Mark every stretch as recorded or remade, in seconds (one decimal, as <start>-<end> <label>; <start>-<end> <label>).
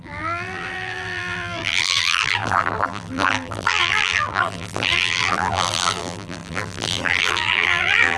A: 0.0-8.2 remade